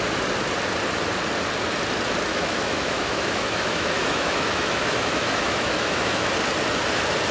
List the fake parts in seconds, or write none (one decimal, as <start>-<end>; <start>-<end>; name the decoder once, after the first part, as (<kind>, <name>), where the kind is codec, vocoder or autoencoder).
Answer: 2.3-6.3 (autoencoder, DAC-VAE)